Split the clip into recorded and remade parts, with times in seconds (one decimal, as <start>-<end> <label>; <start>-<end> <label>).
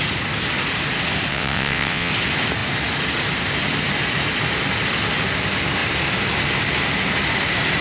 0.0-1.3 recorded; 1.3-2.1 remade; 2.1-7.8 recorded